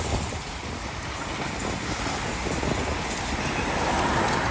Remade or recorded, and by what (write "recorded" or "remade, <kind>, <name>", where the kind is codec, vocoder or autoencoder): recorded